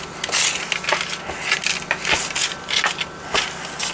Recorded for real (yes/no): yes